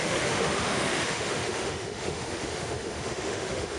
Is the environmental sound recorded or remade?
remade